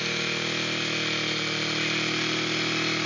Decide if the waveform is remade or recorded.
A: recorded